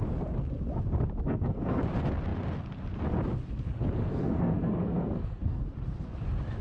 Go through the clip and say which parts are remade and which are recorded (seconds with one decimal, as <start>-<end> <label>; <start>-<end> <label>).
0.0-1.2 recorded; 1.2-1.8 remade; 1.8-4.1 recorded; 4.1-5.6 remade; 5.6-6.6 recorded